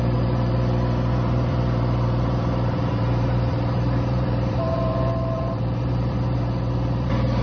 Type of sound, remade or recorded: remade